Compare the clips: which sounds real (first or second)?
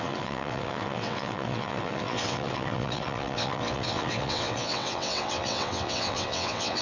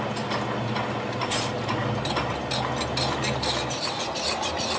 second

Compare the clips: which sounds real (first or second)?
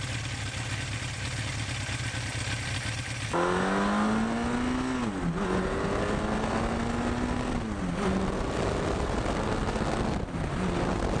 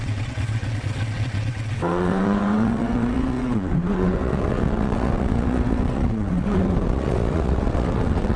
first